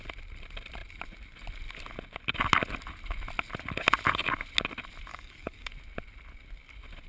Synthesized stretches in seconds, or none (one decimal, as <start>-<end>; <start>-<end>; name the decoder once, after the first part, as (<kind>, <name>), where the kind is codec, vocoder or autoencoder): 5.1-5.7 (codec, DAC)